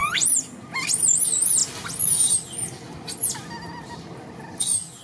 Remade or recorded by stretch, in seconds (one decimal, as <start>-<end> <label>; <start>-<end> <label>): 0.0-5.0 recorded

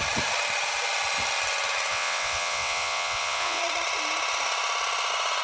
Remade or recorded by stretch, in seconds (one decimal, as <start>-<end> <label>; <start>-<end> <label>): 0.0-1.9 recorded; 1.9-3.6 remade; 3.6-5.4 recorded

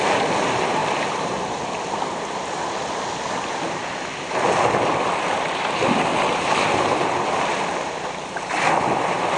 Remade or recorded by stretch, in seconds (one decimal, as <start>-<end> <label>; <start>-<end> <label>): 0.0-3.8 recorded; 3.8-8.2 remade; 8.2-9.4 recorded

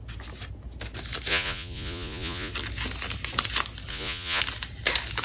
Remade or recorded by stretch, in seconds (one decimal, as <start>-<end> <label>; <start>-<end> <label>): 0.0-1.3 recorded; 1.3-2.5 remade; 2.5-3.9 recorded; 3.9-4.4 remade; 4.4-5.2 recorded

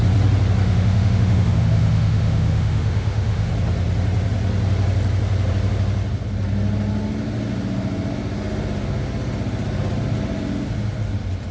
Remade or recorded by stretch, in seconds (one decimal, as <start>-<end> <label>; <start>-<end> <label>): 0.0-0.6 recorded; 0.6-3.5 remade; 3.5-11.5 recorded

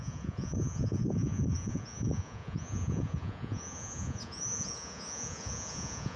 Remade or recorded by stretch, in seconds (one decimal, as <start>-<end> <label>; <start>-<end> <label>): 0.0-6.2 remade

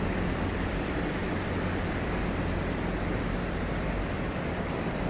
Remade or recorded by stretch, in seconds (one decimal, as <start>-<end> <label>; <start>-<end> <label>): 0.0-1.2 remade; 1.2-4.3 recorded; 4.3-5.1 remade